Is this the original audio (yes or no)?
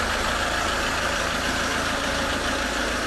yes